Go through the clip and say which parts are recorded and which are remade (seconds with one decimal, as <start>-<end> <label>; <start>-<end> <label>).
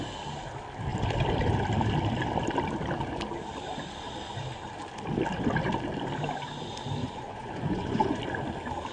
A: 0.0-7.0 recorded; 7.0-8.2 remade; 8.2-8.9 recorded